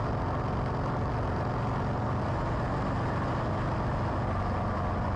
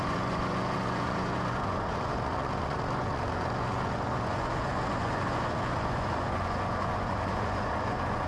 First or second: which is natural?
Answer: first